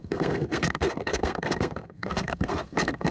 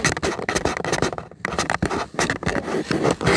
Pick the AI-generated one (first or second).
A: first